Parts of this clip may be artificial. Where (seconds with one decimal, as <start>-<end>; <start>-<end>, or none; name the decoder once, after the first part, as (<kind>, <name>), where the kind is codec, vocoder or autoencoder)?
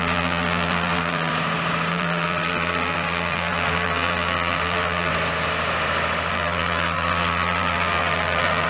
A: 0.0-1.3 (vocoder, BigVGAN v2); 1.9-5.1; 6.3-8.7